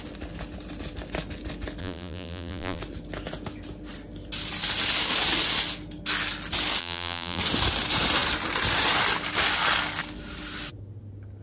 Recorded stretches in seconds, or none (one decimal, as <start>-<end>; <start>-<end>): 0.0-1.8; 2.8-6.8; 7.4-11.4